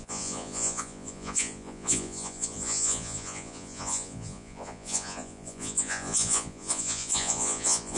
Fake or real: fake